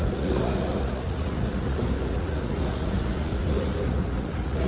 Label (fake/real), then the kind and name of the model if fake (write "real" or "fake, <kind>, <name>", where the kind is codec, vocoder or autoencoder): fake, vocoder, Vocos